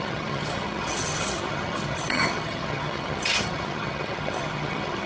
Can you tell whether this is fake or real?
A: fake